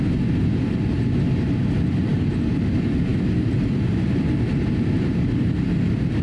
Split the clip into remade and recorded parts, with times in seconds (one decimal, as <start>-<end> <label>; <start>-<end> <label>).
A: 0.0-6.2 recorded